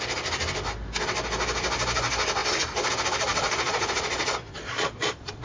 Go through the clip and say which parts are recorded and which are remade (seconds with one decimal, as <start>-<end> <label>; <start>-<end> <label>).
0.0-3.3 recorded; 3.3-5.4 remade